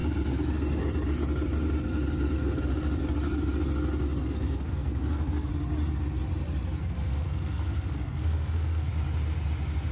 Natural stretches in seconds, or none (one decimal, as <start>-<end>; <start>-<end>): 0.0-4.2; 5.5-6.8; 8.9-9.9